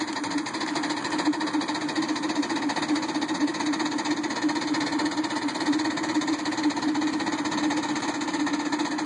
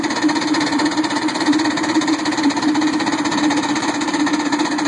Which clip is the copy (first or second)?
second